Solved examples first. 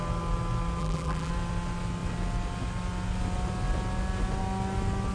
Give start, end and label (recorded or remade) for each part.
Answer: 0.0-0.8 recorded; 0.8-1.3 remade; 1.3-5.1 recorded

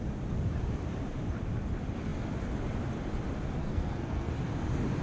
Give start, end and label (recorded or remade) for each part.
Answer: 0.0-3.6 recorded; 3.6-4.3 remade; 4.3-5.0 recorded

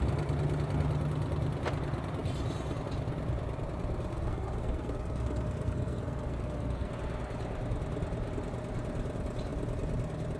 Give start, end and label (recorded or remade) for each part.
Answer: 0.0-4.1 recorded; 4.1-6.9 remade; 6.9-10.4 recorded

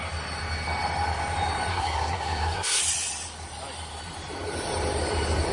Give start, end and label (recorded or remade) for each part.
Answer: 0.0-1.7 recorded; 1.7-2.8 remade; 2.8-5.5 recorded

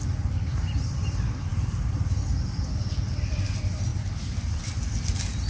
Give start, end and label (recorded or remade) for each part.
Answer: 0.0-5.5 remade

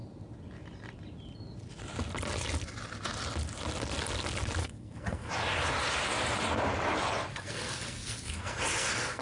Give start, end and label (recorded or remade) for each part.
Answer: 0.0-4.6 recorded; 4.6-5.3 remade; 5.3-7.3 recorded; 7.3-9.2 remade

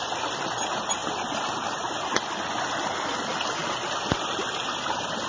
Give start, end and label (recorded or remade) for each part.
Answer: 0.0-1.0 recorded; 1.0-2.6 remade; 2.6-5.3 recorded